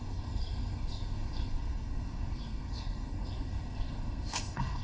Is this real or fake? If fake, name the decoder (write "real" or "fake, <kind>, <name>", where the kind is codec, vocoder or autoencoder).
fake, codec, SNAC